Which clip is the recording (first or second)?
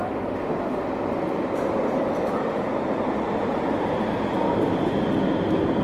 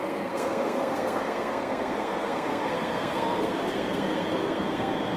first